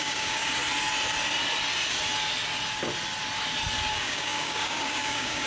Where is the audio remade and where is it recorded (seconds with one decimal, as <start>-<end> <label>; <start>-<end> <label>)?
0.0-0.6 remade; 0.6-3.9 recorded; 3.9-5.5 remade